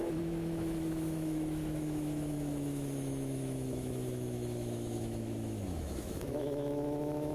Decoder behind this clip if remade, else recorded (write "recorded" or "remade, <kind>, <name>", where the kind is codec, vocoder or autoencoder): remade, autoencoder, DAC-VAE